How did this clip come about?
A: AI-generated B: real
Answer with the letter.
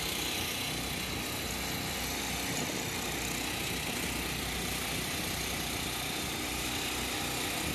B